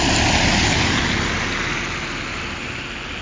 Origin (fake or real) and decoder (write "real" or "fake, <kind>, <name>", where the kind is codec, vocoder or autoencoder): real